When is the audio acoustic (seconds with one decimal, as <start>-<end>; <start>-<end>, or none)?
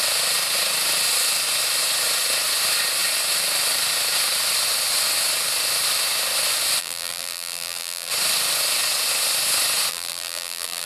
0.0-6.8; 8.1-9.9